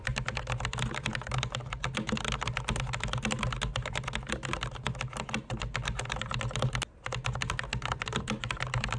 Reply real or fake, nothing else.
real